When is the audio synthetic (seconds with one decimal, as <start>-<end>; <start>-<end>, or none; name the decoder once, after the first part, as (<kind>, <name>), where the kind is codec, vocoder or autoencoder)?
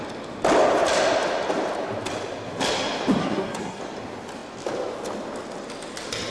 3.2-3.8 (codec, SNAC)